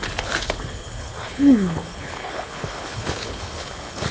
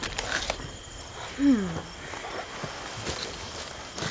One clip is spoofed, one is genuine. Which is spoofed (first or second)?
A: first